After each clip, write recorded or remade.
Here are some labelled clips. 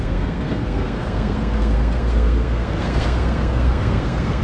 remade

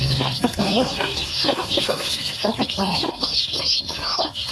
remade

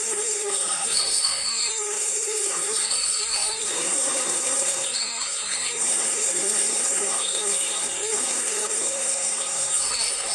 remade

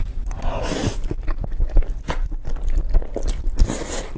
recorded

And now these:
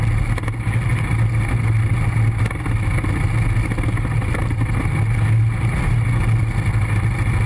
recorded